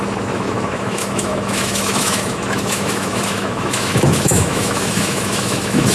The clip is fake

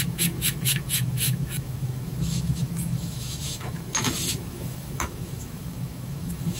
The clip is fake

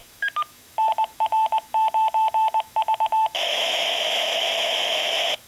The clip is fake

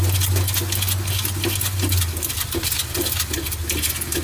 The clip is real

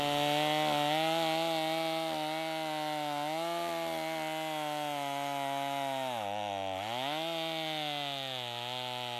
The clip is real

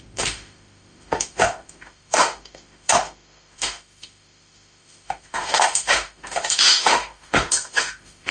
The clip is fake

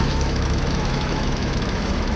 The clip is fake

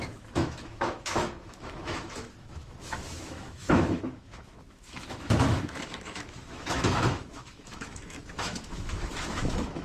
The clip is fake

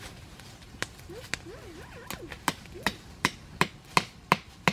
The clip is real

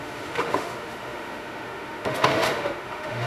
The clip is fake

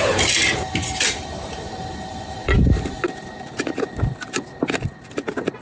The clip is real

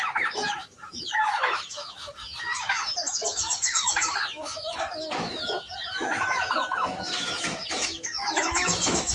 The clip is fake